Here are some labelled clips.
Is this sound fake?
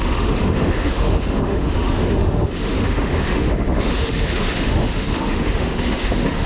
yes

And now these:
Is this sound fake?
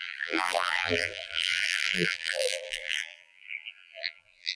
yes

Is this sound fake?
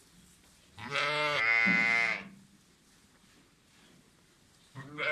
no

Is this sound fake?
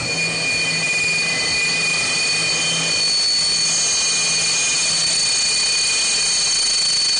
no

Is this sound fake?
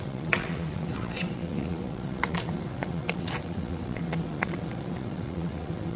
yes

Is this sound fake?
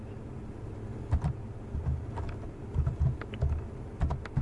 no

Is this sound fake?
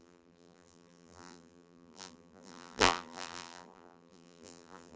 yes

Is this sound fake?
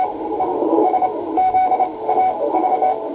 yes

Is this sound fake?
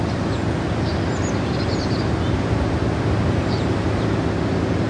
no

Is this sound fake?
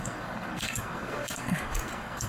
yes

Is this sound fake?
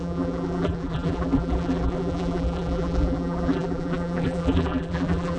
yes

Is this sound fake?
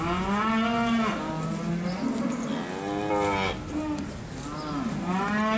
no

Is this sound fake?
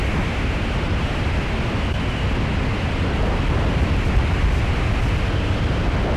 no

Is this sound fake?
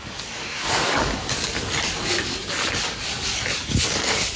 yes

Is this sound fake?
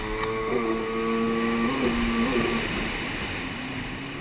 no